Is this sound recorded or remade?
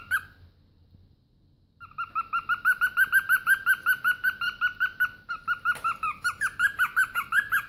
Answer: recorded